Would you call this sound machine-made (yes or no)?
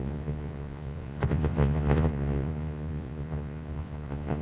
yes